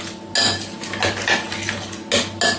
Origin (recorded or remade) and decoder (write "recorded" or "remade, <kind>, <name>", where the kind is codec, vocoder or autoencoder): recorded